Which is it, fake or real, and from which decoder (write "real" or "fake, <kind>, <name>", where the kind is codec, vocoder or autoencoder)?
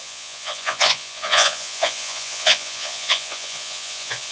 fake, vocoder, Vocos